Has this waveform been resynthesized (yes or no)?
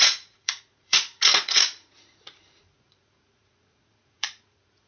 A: yes